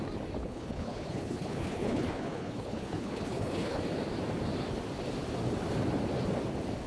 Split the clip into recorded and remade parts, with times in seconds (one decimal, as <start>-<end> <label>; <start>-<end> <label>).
0.0-0.4 recorded; 0.4-3.8 remade; 3.8-6.9 recorded